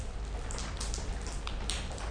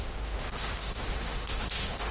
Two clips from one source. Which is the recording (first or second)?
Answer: first